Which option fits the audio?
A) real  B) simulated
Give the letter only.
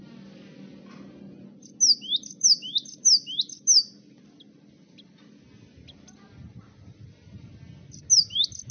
A